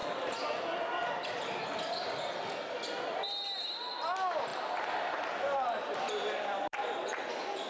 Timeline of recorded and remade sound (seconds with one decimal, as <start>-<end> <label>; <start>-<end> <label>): 0.0-0.6 recorded; 0.6-1.6 remade; 1.6-3.9 recorded; 3.9-7.7 remade